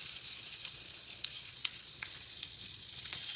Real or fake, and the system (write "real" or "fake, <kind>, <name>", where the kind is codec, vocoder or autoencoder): fake, vocoder, Vocos